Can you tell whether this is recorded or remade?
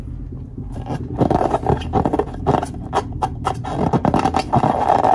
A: remade